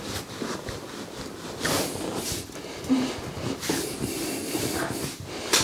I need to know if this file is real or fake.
real